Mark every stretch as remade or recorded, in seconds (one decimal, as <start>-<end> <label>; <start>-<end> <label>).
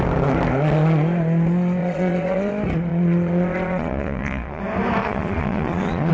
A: 0.0-1.8 recorded; 1.8-2.5 remade; 2.5-2.9 recorded; 2.9-4.6 remade; 4.6-5.0 recorded; 5.0-6.1 remade